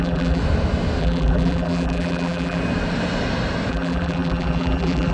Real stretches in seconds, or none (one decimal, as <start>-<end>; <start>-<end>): 0.4-1.0; 2.6-3.7